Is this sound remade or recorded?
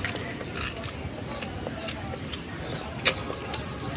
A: recorded